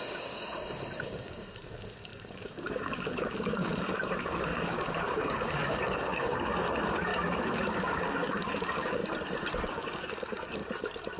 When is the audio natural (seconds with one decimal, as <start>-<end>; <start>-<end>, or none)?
9.0-9.7; 10.6-11.2